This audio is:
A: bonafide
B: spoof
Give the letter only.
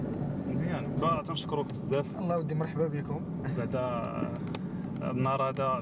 A